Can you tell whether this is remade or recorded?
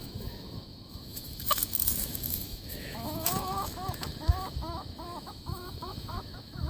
remade